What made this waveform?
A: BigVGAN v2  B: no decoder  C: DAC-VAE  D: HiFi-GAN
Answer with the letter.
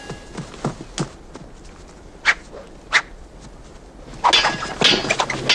B